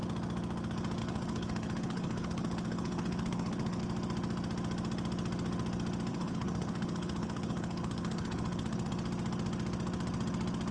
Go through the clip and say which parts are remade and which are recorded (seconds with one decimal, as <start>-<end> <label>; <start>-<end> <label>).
0.0-1.0 recorded; 1.0-3.8 remade; 3.8-6.1 recorded; 6.1-8.9 remade; 8.9-10.7 recorded